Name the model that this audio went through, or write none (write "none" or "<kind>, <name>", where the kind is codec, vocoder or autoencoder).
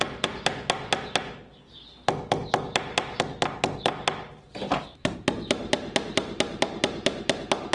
none